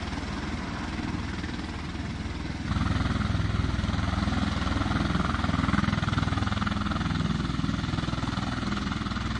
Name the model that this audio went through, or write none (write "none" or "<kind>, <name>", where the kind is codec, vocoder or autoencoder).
none